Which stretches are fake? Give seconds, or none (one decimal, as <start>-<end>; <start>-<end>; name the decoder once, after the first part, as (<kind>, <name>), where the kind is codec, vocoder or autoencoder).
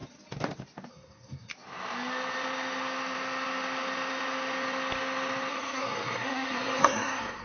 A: 0.9-1.5 (codec, SNAC); 5.5-7.4